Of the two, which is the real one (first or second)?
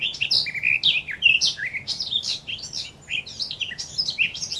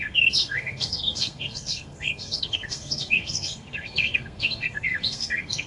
first